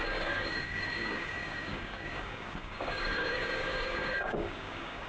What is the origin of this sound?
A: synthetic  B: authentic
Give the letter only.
A